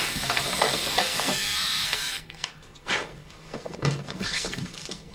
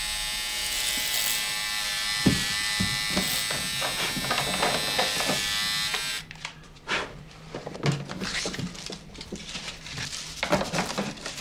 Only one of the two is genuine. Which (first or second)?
second